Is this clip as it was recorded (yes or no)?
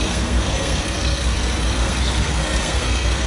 no